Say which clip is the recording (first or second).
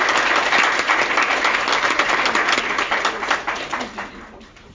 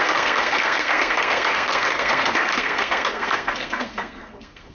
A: first